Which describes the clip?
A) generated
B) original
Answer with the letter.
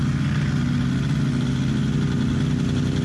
B